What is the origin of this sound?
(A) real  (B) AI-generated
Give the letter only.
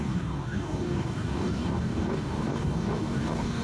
B